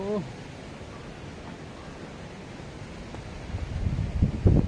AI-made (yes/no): no